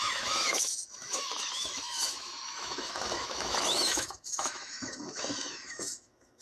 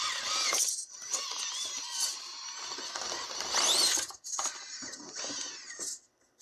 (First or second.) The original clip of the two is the second